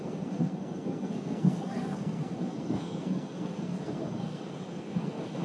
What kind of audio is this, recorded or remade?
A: remade